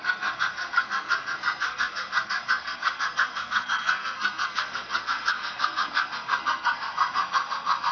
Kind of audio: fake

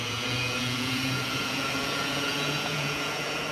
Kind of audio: fake